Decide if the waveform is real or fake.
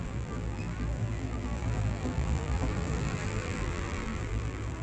fake